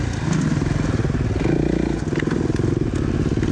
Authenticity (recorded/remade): recorded